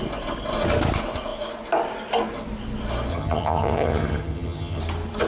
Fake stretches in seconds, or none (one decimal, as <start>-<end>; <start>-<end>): 3.1-4.8